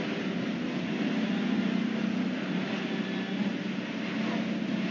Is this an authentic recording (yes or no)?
yes